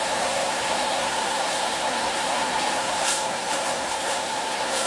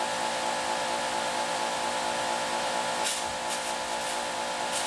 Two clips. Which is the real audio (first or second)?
second